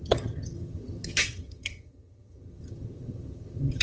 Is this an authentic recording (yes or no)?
no